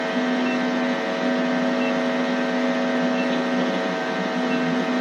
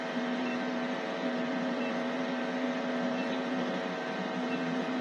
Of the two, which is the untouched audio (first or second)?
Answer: first